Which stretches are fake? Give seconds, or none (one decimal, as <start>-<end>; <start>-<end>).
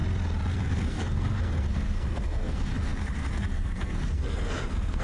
0.5-5.0